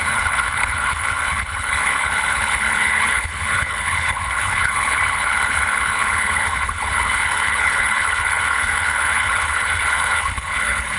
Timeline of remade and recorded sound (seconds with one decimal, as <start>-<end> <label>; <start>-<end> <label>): 0.0-11.0 remade

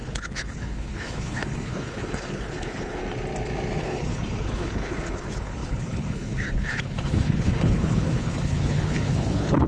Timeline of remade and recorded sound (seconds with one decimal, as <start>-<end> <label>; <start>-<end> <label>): 0.0-3.0 remade; 3.0-3.8 recorded; 3.8-9.7 remade

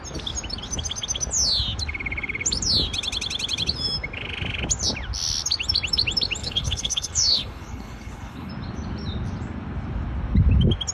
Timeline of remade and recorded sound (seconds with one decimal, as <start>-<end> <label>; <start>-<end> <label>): 0.0-6.4 recorded; 6.4-8.5 remade; 8.5-10.9 recorded

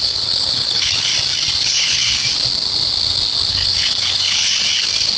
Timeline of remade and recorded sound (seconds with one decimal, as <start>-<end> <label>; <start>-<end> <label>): 0.0-1.1 remade; 1.1-1.6 recorded; 1.6-2.2 remade; 2.2-3.5 recorded; 3.5-4.5 remade; 4.5-5.2 recorded